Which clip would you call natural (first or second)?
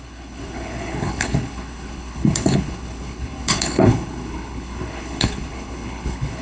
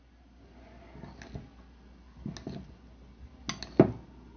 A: second